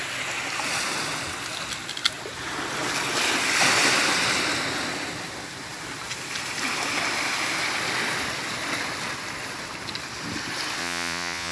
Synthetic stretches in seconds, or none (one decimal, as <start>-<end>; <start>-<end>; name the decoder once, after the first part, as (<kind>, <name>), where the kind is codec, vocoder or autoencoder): 10.8-11.5 (vocoder, Vocos)